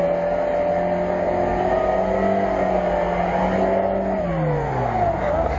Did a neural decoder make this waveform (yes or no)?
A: no